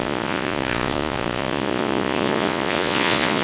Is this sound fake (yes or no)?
yes